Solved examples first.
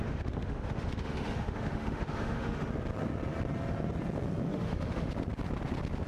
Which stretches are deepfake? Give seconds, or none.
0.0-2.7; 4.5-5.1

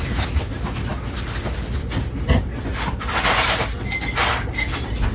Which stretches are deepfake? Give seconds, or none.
none